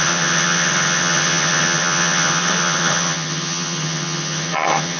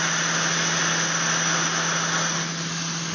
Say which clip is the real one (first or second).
second